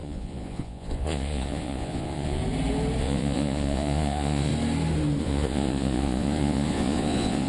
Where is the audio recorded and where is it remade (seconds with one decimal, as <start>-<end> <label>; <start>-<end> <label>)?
0.0-2.4 remade; 2.4-3.0 recorded; 3.0-4.5 remade; 4.5-5.2 recorded; 5.2-7.5 remade